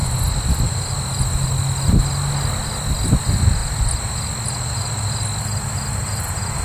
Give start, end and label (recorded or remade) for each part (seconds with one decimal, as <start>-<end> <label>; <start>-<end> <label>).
0.0-6.6 recorded

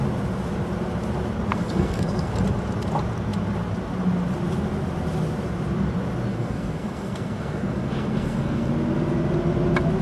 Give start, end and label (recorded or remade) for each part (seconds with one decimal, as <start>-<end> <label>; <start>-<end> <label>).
0.0-1.5 recorded; 1.5-2.3 remade; 2.3-6.3 recorded; 6.3-8.7 remade; 8.7-10.0 recorded

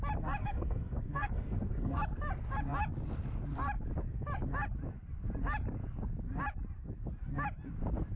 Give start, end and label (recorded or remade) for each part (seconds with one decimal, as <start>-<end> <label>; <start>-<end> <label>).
0.0-0.4 recorded; 0.4-2.0 remade; 2.0-8.2 recorded

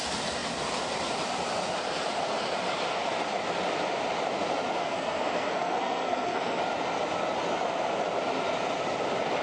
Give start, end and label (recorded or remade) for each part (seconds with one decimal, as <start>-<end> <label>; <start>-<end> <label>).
0.0-4.8 recorded; 4.8-6.6 remade; 6.6-9.4 recorded